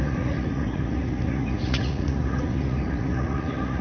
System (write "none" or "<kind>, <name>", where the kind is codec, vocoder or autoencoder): vocoder, Vocos